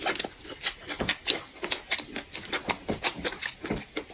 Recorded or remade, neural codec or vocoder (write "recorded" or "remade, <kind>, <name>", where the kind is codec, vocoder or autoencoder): recorded